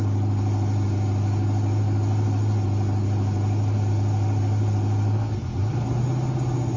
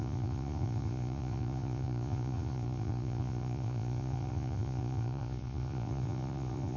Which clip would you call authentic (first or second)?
first